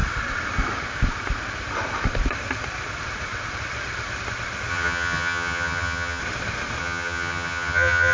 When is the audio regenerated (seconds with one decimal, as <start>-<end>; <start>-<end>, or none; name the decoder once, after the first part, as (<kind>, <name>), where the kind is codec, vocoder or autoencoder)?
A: 4.7-6.2 (vocoder, HiFi-GAN); 6.8-8.1